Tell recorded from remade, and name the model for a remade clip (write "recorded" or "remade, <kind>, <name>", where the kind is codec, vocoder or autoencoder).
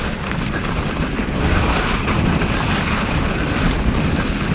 recorded